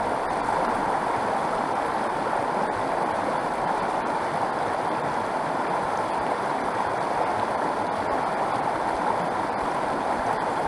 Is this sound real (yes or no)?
yes